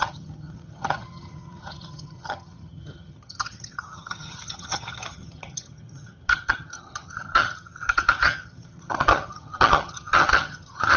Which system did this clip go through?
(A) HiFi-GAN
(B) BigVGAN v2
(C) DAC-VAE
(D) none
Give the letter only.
A